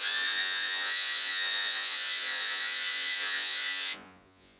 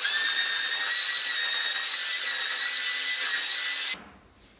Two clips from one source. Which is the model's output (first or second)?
first